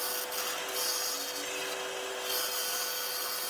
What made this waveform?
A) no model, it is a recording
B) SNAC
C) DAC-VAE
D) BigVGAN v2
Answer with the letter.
A